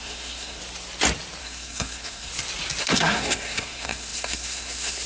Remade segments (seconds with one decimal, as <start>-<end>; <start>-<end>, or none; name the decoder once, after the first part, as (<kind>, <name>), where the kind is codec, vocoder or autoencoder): 0.0-0.6 (codec, SNAC); 1.4-2.3; 2.8-5.1